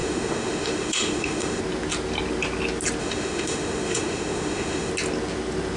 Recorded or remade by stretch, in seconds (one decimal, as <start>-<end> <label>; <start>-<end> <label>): 0.0-1.6 remade; 1.6-3.0 recorded; 3.0-4.9 remade; 4.9-5.8 recorded